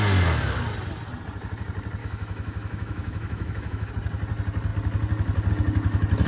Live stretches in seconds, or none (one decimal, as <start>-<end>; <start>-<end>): 0.0-2.0; 3.9-6.3